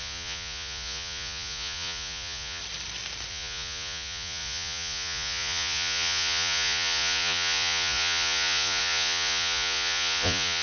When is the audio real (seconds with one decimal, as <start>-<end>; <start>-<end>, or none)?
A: 2.6-3.3